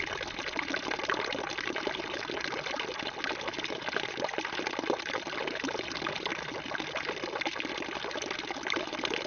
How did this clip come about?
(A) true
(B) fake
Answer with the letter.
A